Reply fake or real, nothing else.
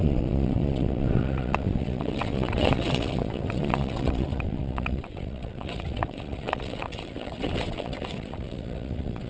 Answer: fake